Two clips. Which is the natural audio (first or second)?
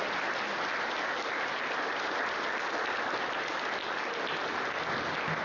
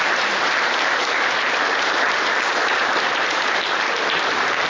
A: first